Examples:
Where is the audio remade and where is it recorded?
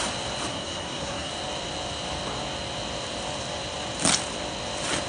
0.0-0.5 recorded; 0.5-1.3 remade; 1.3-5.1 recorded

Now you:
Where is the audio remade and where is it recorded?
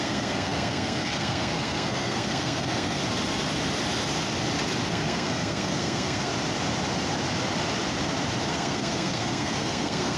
0.0-3.0 remade; 3.0-4.9 recorded; 4.9-6.3 remade; 6.3-8.5 recorded; 8.5-10.2 remade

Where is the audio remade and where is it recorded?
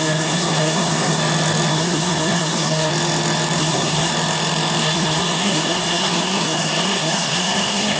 0.0-1.2 remade; 1.2-1.7 recorded; 1.7-2.9 remade; 2.9-3.6 recorded; 3.6-4.1 remade; 4.1-4.8 recorded; 4.8-8.0 remade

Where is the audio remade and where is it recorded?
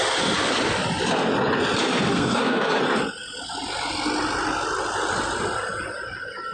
0.0-2.1 recorded; 2.1-2.8 remade; 2.8-6.5 recorded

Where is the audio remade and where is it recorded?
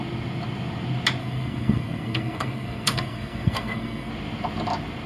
0.0-1.2 recorded; 1.2-4.1 remade; 4.1-5.1 recorded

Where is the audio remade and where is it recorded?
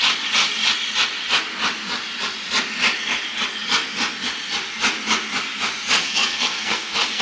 0.0-6.0 recorded; 6.0-7.2 remade